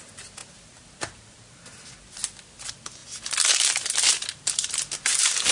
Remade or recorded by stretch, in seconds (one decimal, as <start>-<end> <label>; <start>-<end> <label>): 0.0-5.5 recorded